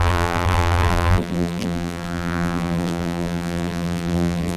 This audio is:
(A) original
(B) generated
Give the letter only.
B